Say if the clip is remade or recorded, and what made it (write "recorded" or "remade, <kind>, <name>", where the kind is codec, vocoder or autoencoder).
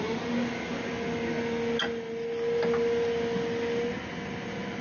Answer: recorded